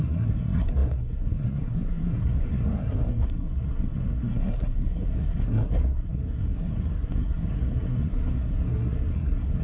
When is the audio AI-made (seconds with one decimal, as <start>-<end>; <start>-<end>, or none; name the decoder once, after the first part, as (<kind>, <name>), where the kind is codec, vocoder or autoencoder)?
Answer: 0.0-9.6 (codec, SNAC)